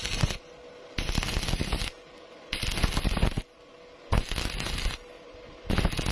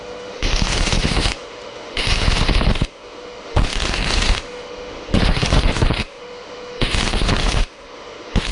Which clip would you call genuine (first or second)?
first